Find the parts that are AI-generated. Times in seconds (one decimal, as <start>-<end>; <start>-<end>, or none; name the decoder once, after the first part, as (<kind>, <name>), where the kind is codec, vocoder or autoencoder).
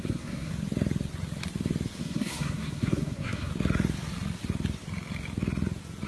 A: 0.0-0.5 (codec, SNAC); 2.0-3.5